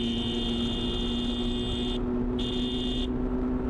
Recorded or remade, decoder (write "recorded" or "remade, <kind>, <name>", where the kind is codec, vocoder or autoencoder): recorded